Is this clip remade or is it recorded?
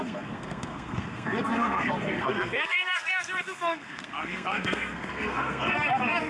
remade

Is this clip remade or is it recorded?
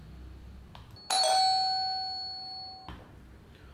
recorded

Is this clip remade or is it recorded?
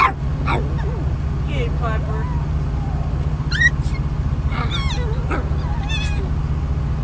recorded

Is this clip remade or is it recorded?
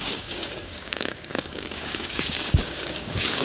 remade